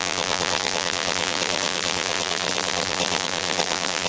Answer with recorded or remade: remade